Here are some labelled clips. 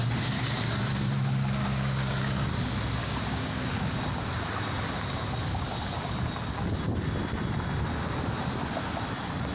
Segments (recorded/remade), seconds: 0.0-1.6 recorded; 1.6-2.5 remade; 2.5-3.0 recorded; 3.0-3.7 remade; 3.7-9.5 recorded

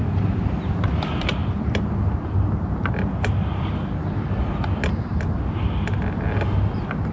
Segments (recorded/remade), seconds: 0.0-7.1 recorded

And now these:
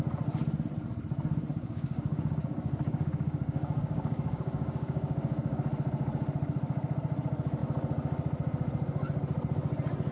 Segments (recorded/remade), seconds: 0.0-1.5 recorded; 1.5-5.6 remade; 5.6-10.1 recorded

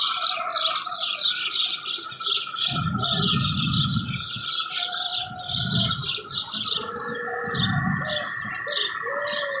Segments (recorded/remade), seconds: 0.0-9.6 recorded

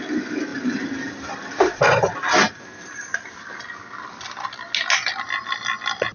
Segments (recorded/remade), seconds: 0.0-6.1 recorded